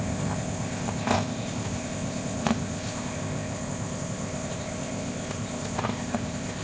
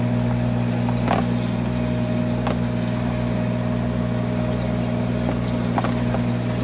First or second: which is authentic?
second